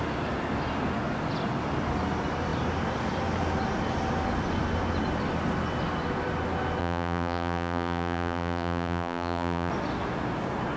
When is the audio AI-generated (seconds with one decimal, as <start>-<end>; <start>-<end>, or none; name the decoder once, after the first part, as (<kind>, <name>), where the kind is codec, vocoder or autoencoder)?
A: 6.8-9.7 (vocoder, BigVGAN v2)